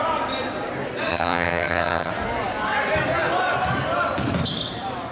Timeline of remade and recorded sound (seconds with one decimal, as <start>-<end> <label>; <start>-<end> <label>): 0.0-1.1 recorded; 1.1-2.1 remade; 2.1-5.1 recorded